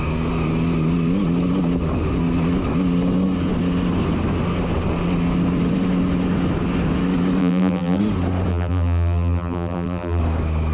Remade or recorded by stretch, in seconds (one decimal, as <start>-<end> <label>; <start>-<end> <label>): 0.0-7.4 recorded; 7.4-8.0 remade; 8.0-8.5 recorded; 8.5-10.2 remade; 10.2-10.7 recorded